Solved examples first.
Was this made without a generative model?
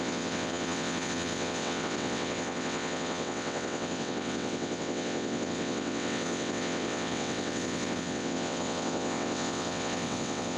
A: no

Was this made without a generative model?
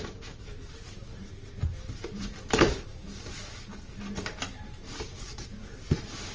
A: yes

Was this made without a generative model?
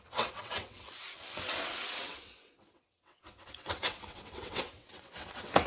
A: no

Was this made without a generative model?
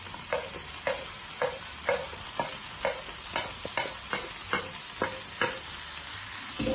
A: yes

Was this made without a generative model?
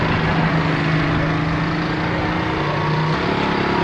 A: yes